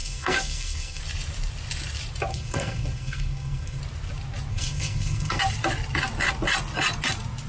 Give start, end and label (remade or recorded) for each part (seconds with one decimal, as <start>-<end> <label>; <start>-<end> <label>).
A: 0.0-1.0 remade; 1.0-2.3 recorded; 2.3-3.8 remade; 3.8-4.5 recorded; 4.5-5.4 remade; 5.4-7.5 recorded